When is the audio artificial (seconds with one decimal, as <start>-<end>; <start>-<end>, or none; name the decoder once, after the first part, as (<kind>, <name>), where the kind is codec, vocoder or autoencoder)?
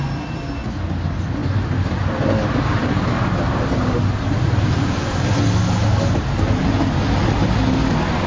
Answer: none